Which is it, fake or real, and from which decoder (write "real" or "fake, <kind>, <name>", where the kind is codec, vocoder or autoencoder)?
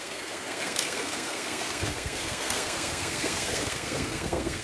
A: fake, codec, SNAC